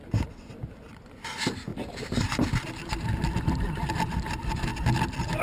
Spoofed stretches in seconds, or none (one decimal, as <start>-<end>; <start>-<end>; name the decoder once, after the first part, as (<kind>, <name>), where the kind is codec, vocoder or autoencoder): 1.7-3.4 (vocoder, BigVGAN v2)